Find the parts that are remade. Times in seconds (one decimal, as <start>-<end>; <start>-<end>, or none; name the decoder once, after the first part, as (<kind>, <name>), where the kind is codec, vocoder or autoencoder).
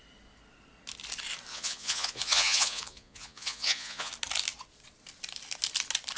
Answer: 1.5-4.1 (vocoder, Vocos)